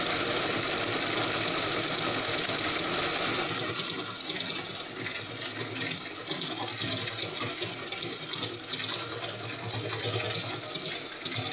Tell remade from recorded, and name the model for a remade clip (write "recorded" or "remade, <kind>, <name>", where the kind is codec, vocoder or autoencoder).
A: recorded